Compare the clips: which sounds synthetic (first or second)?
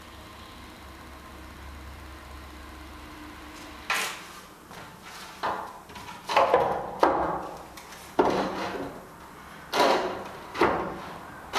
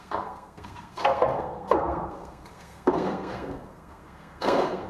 second